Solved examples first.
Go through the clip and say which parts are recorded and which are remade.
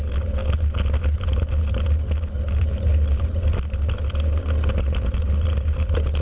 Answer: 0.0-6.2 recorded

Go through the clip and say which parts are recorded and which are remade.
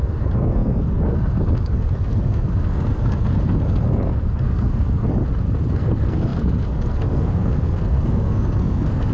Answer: 0.0-5.1 remade; 5.1-5.7 recorded; 5.7-9.1 remade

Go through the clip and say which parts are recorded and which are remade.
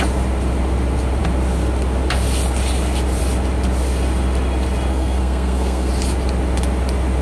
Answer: 0.0-4.9 recorded; 4.9-5.9 remade; 5.9-7.2 recorded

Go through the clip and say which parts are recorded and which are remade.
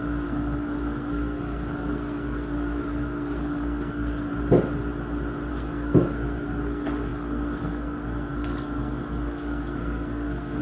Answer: 0.0-4.3 remade; 4.3-5.5 recorded; 5.5-10.6 remade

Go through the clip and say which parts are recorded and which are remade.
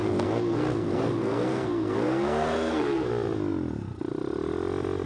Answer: 0.0-3.1 remade; 3.1-5.1 recorded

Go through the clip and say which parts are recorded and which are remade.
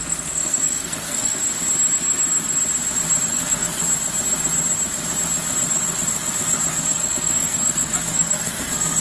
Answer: 0.0-1.4 remade; 1.4-3.3 recorded; 3.3-3.8 remade; 3.8-6.7 recorded; 6.7-9.0 remade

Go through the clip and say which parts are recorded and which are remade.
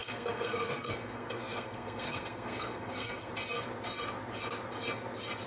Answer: 0.0-3.3 remade; 3.3-5.5 recorded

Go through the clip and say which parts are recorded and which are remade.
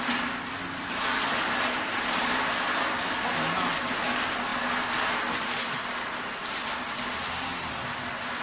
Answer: 0.0-8.4 recorded